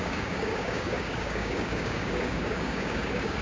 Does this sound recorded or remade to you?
remade